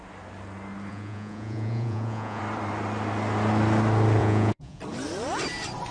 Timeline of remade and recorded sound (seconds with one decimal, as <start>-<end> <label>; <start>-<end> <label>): 0.0-0.9 recorded; 0.9-2.4 remade; 2.4-4.2 recorded; 4.2-4.8 remade; 4.8-5.9 recorded

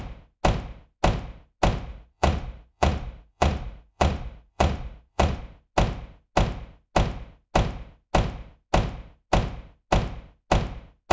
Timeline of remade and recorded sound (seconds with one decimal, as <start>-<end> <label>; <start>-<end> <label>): 0.0-1.9 recorded; 1.9-5.4 remade; 5.4-11.1 recorded